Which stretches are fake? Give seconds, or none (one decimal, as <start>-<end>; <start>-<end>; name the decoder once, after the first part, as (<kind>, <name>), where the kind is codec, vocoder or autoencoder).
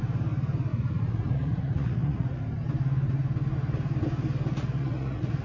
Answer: 0.7-2.4 (vocoder, Vocos); 4.5-5.4